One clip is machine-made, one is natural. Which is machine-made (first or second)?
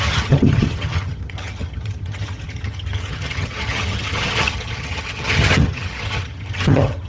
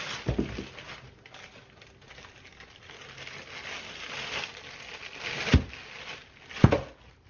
first